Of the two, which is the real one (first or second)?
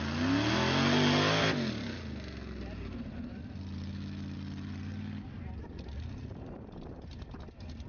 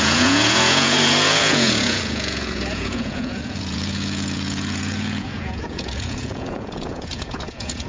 first